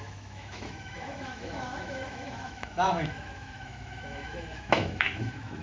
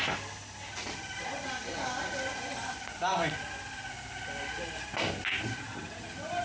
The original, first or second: second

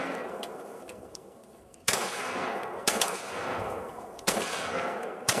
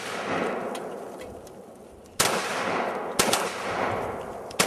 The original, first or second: second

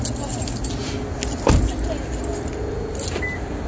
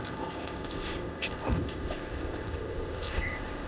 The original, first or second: first